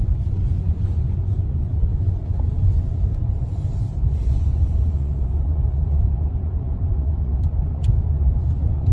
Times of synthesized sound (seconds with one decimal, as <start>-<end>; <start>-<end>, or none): 0.0-8.9